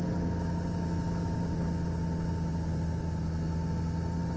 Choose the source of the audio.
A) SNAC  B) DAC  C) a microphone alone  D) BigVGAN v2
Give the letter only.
C